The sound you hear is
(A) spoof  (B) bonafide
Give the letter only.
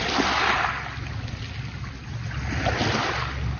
B